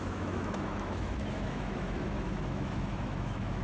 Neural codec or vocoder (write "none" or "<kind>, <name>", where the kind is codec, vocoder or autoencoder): autoencoder, DAC-VAE